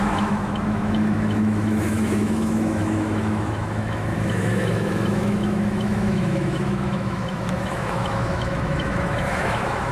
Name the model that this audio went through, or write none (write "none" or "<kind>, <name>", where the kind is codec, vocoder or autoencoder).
autoencoder, DAC-VAE